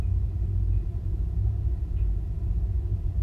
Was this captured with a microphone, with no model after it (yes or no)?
no